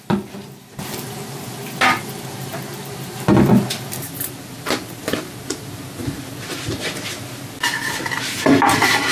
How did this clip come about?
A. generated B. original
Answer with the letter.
B